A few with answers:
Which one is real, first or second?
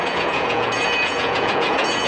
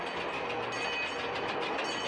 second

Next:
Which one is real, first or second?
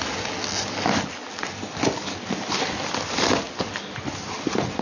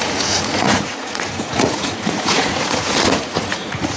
first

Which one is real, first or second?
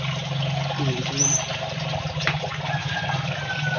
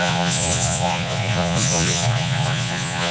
first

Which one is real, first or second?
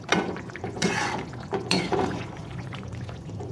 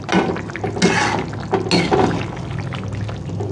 second